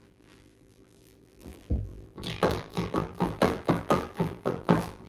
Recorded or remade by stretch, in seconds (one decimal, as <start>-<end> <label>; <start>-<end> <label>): 0.0-5.1 remade